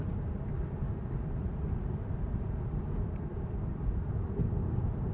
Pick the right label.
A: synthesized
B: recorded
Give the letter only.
B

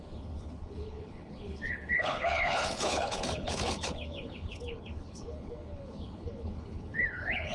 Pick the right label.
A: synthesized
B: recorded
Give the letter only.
A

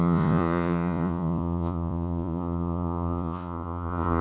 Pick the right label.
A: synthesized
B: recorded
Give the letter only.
A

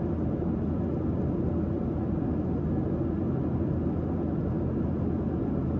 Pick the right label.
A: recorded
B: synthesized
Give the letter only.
A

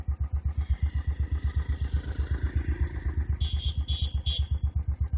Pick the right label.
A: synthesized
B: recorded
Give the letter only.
B